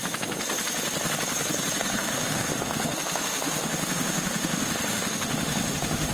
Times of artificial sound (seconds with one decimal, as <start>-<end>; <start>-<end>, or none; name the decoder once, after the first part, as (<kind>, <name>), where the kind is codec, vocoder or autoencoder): 2.0-6.1 (autoencoder, DAC-VAE)